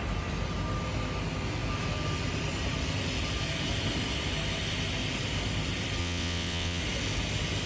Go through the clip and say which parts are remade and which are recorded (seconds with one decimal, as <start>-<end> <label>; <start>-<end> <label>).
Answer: 0.0-6.0 recorded; 6.0-6.8 remade; 6.8-7.7 recorded